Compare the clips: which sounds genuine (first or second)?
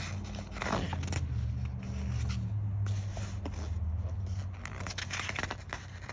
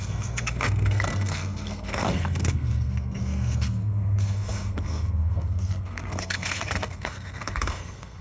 first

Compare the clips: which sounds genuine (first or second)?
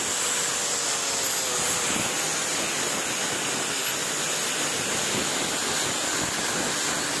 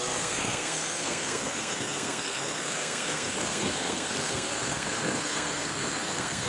first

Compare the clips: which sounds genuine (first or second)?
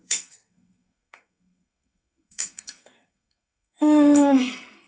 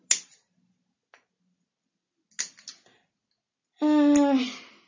second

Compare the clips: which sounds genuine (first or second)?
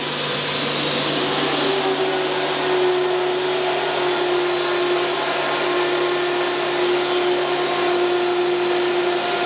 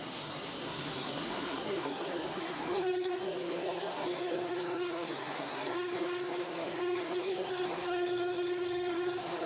first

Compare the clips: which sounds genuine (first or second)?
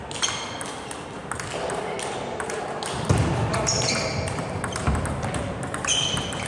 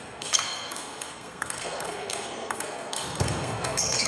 first